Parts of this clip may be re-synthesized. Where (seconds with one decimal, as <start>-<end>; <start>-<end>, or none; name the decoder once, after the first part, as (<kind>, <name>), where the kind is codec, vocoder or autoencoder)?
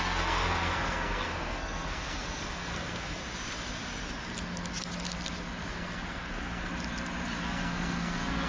0.0-3.2 (codec, SNAC); 5.7-6.7; 7.4-8.5